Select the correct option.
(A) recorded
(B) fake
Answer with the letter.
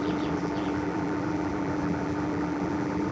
B